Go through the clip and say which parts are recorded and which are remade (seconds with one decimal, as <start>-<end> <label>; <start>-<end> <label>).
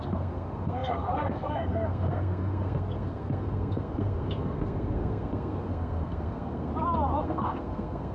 0.0-6.7 remade; 6.7-7.2 recorded; 7.2-8.1 remade